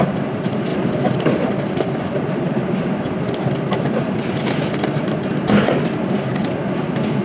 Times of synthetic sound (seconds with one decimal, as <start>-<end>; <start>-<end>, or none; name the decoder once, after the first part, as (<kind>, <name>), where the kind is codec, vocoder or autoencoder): none